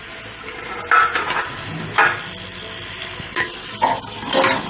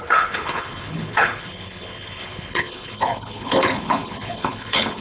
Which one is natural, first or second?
first